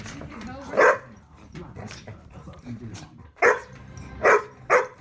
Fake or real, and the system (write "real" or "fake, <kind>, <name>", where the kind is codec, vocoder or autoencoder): fake, vocoder, BigVGAN v2